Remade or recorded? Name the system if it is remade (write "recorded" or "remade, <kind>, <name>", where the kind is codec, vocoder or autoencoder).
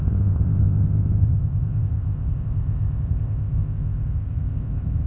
remade, codec, ZipCodec